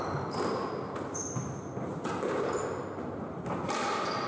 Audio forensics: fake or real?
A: real